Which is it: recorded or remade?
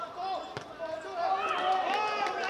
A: recorded